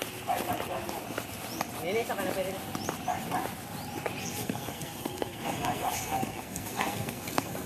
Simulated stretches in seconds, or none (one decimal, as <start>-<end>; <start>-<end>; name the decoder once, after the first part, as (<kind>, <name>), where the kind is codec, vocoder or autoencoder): 4.2-7.7 (codec, SNAC)